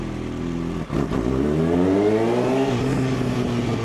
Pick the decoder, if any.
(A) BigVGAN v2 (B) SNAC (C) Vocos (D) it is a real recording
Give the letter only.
D